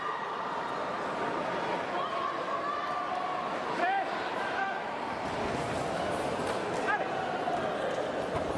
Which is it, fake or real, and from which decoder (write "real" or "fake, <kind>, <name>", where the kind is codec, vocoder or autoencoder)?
fake, vocoder, BigVGAN v2